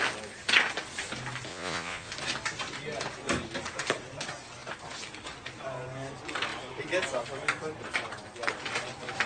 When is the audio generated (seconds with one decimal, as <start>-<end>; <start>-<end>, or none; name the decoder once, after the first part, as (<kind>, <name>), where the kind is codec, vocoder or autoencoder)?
1.5-2.1 (vocoder, Vocos)